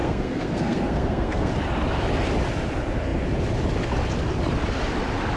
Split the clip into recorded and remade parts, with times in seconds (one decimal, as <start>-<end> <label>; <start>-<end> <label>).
0.0-1.5 remade; 1.5-5.4 recorded